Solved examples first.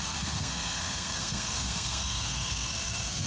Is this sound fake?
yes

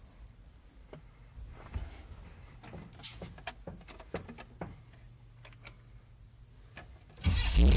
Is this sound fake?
no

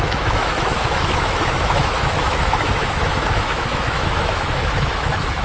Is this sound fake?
yes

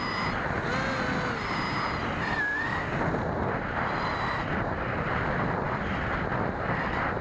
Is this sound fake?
no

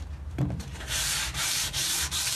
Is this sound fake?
yes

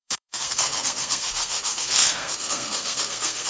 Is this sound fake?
yes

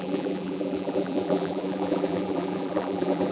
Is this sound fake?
yes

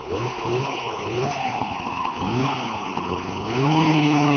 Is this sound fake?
yes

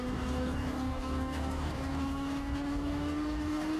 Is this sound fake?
yes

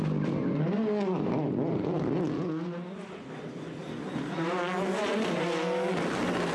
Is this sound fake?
no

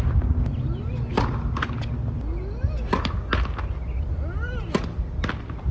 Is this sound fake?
no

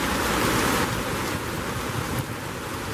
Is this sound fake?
no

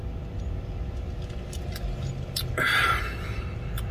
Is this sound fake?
no